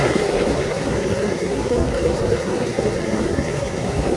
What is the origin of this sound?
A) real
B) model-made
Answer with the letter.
B